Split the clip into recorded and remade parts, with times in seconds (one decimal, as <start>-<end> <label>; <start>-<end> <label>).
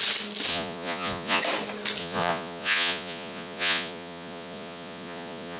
0.0-0.5 recorded; 0.5-1.4 remade; 1.4-2.0 recorded; 2.0-5.6 remade